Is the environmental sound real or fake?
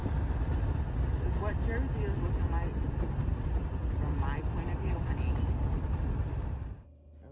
real